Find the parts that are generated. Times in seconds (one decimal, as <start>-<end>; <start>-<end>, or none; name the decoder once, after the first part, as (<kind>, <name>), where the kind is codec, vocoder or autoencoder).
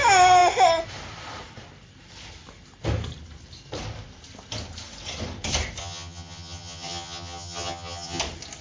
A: 5.8-8.2 (vocoder, HiFi-GAN)